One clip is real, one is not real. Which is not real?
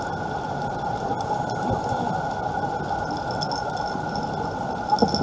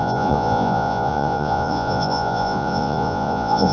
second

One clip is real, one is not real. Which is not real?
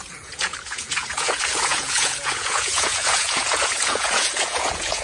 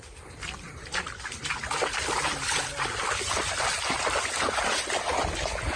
first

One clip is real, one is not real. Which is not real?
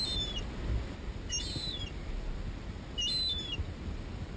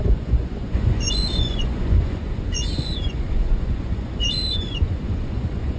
second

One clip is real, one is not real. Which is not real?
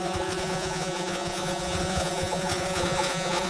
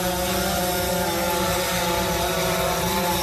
first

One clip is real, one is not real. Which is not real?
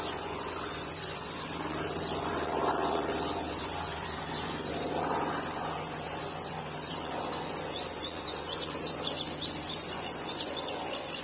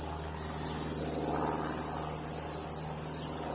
first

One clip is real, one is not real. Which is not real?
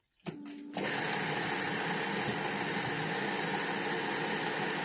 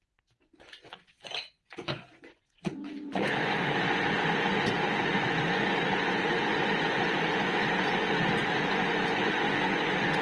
second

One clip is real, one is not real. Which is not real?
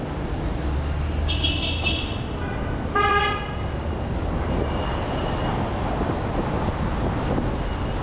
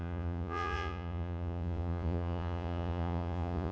second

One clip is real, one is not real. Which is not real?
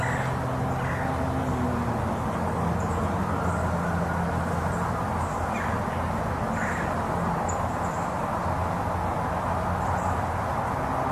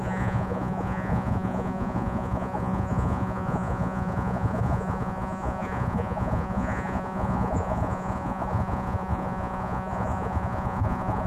second